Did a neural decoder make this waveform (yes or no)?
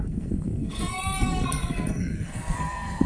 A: yes